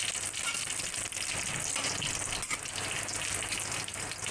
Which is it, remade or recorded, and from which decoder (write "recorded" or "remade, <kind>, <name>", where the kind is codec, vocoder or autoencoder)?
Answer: recorded